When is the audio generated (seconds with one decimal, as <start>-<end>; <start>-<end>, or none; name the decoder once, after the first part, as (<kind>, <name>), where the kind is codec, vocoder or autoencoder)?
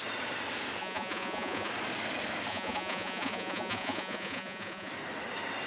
0.8-1.7 (vocoder, Vocos); 2.5-4.9